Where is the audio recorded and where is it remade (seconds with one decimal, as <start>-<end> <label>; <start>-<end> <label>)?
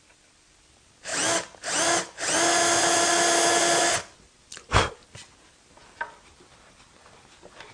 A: 0.0-7.7 recorded